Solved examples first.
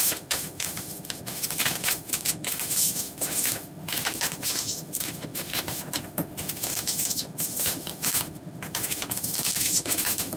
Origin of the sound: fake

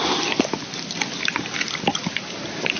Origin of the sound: real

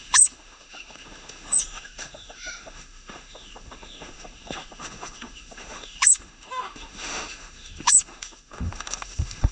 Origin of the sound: fake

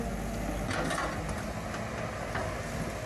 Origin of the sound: real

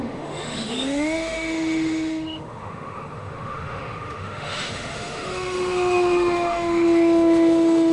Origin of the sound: fake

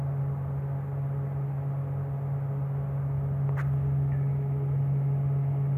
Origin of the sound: real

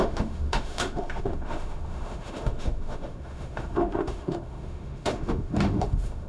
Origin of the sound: fake